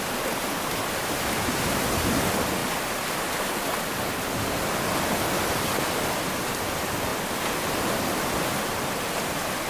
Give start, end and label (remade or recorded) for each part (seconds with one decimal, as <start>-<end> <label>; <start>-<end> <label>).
0.0-9.7 recorded